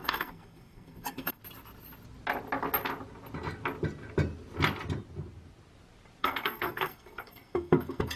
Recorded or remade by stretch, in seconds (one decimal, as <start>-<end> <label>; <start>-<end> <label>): 0.0-1.4 remade; 1.4-6.2 recorded; 6.2-8.2 remade